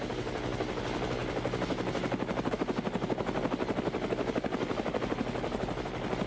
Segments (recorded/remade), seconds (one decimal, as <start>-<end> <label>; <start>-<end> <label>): 0.0-6.3 recorded